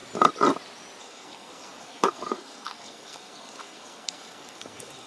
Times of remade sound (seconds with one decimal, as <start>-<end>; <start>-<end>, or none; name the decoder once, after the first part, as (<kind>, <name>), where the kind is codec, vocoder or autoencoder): 1.0-5.1 (codec, SNAC)